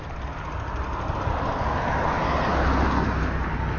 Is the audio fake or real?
real